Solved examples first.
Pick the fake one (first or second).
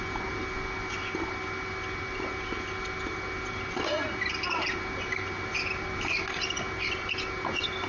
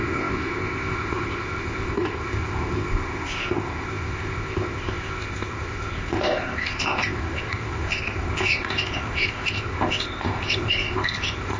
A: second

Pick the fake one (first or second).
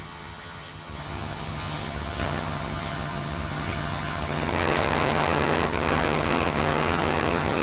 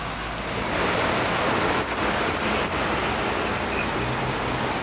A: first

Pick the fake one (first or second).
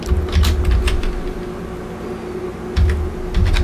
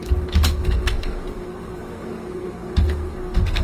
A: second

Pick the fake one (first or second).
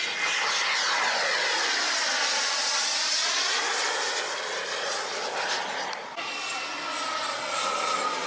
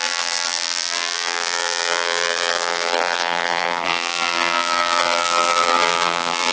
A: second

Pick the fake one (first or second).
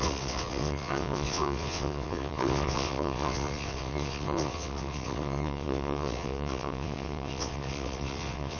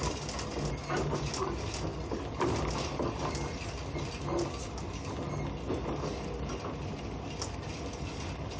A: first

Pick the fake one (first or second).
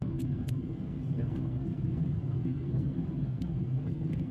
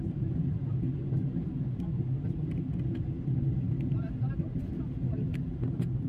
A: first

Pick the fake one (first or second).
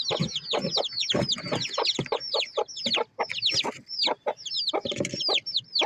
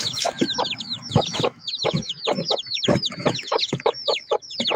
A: second